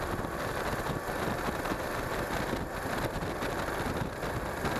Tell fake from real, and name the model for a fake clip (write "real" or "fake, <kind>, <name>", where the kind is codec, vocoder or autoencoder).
real